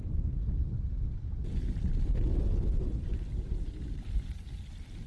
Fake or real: real